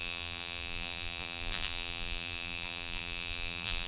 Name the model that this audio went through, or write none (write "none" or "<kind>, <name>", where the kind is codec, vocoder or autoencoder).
vocoder, BigVGAN v2